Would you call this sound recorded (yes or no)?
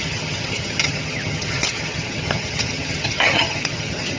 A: no